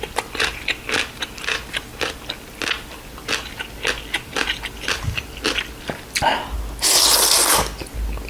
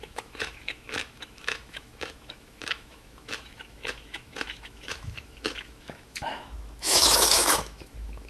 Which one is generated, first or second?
second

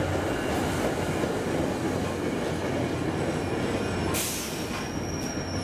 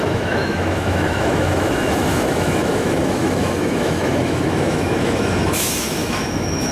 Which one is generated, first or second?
second